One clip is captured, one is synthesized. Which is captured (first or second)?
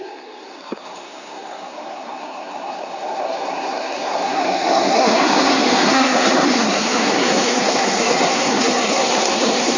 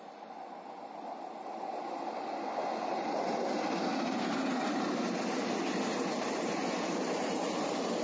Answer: second